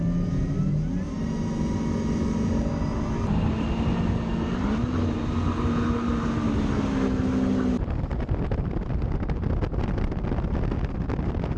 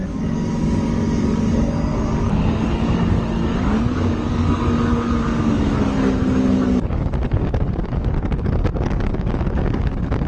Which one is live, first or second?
first